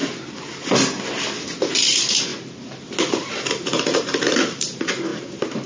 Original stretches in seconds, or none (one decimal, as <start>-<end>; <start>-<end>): 0.0-1.7; 2.3-3.5